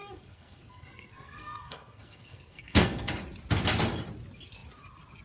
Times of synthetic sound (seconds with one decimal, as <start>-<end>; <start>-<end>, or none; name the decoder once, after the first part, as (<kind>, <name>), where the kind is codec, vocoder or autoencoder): 0.0-3.1 (codec, SNAC)